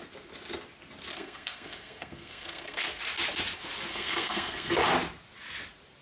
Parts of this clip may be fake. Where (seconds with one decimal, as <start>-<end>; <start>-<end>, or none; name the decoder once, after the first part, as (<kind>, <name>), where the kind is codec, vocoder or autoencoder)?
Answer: 1.1-3.0 (codec, SNAC); 3.9-4.7